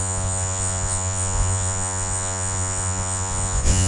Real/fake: fake